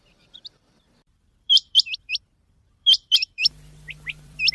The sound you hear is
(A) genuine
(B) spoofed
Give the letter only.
B